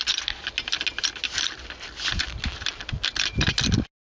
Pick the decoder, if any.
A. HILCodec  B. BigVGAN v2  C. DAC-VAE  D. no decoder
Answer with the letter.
D